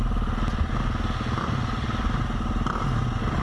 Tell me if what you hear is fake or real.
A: real